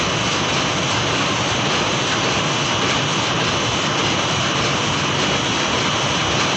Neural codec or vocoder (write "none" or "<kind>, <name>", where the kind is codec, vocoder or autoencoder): none